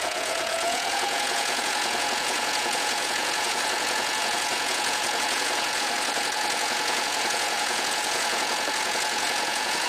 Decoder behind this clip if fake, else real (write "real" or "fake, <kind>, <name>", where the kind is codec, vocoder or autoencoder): fake, vocoder, Vocos